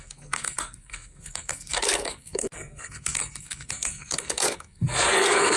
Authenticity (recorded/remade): remade